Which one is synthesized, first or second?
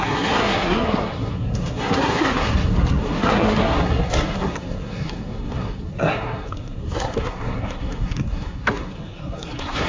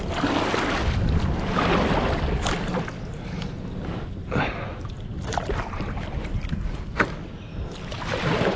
first